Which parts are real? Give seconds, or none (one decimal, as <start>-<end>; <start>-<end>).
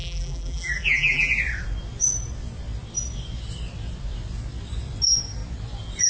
1.3-6.1